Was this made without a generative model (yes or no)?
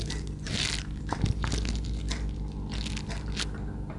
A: yes